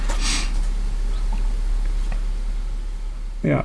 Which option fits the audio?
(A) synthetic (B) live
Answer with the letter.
B